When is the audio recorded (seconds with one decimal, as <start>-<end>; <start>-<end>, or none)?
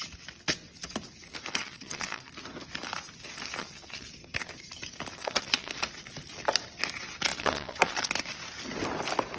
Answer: 0.0-1.5; 2.3-3.6; 4.1-5.2; 5.7-7.3; 8.1-9.4